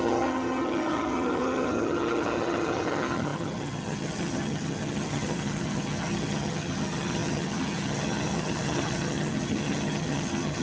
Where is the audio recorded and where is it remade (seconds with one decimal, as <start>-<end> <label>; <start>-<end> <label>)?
0.0-10.6 remade